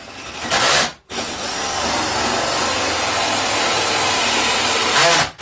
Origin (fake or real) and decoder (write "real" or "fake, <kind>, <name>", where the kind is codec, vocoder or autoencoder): real